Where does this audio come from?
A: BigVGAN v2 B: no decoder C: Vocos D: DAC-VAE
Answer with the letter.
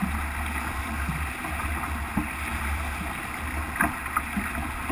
B